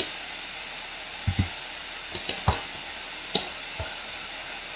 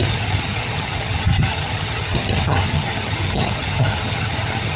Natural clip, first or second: first